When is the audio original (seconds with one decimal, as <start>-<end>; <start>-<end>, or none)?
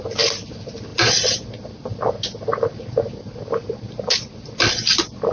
0.0-5.3